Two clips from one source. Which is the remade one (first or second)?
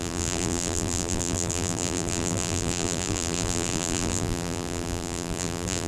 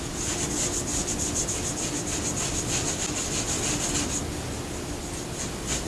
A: first